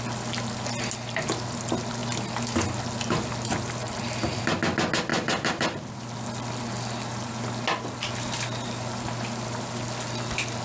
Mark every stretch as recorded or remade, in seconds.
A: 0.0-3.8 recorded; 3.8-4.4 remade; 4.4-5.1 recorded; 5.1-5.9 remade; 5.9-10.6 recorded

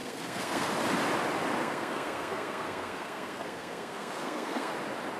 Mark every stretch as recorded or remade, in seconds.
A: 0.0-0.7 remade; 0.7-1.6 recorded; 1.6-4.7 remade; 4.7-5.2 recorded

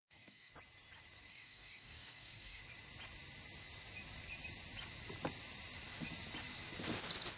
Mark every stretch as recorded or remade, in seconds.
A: 0.0-0.5 remade; 0.5-1.3 recorded; 1.3-2.6 remade; 2.6-7.4 recorded